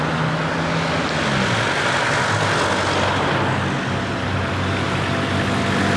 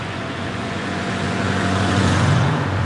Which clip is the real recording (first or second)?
first